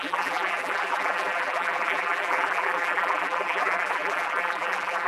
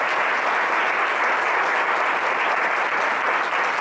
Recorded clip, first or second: second